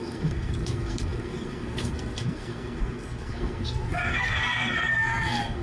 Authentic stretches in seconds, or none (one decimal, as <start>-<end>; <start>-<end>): none